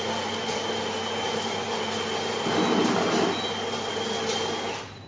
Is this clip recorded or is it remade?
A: recorded